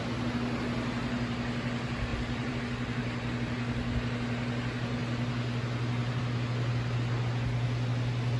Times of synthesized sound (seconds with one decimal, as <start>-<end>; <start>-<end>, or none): 2.1-2.6